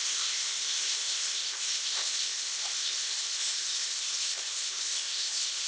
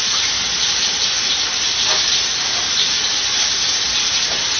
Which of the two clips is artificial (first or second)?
first